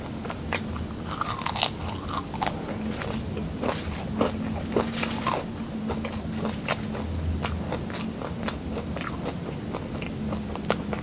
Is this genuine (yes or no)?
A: yes